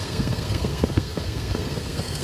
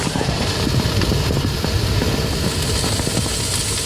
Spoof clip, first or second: first